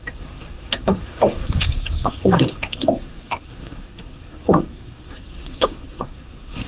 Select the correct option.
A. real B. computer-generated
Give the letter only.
B